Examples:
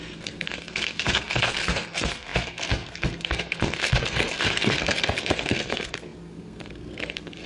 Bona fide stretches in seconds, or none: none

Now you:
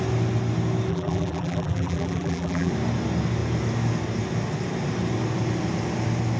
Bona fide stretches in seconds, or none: 0.0-0.9; 2.7-6.4

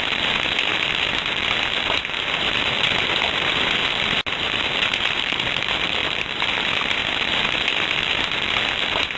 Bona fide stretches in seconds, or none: 0.0-9.2